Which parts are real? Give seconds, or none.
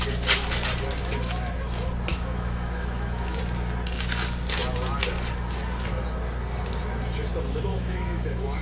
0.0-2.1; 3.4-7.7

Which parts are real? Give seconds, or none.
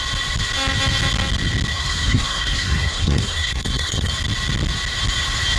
0.0-1.7; 4.1-5.6